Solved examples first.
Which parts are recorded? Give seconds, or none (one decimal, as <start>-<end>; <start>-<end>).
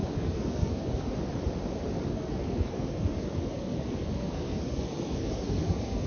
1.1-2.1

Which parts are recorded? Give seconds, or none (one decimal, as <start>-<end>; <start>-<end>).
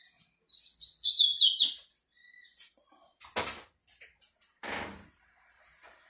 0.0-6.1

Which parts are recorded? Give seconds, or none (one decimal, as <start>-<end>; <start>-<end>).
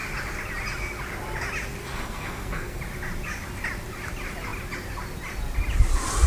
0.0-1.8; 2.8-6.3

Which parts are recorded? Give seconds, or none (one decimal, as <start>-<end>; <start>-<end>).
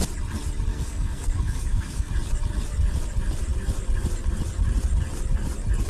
0.0-0.7; 2.1-5.9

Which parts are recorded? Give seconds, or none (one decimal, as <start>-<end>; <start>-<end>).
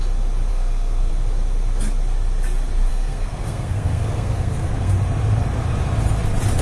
0.0-0.5; 1.1-2.9; 4.9-6.6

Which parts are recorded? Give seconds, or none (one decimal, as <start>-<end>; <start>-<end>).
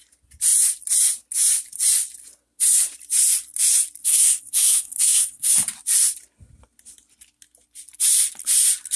0.0-4.0; 5.5-9.0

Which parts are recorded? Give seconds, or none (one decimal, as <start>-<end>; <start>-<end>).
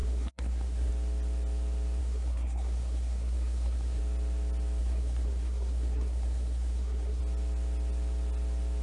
0.9-2.0; 4.0-4.8; 7.2-8.8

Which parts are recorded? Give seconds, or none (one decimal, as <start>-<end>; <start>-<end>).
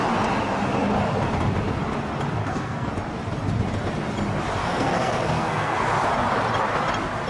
0.0-2.4; 2.9-4.6; 5.8-7.3